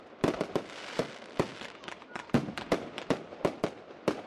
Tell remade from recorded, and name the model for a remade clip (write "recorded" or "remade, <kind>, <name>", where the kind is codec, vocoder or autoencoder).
recorded